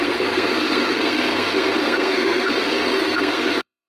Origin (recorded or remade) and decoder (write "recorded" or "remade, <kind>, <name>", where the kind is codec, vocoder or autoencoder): remade, codec, SNAC